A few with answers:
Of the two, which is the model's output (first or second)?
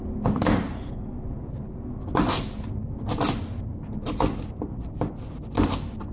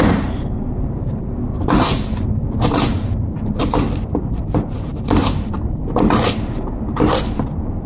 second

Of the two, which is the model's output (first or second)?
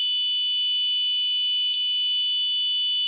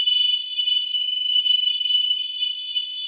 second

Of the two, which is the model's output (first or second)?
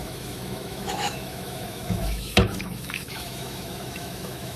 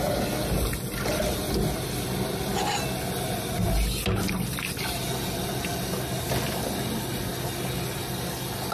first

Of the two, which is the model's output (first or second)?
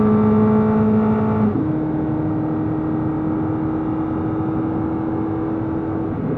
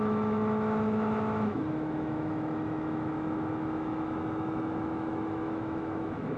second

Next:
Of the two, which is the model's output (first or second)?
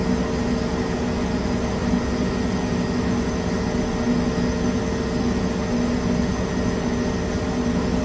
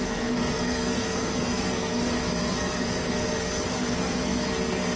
second